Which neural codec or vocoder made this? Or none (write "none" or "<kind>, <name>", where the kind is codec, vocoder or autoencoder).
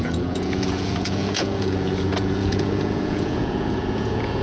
vocoder, Vocos